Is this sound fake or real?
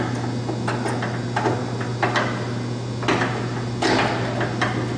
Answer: real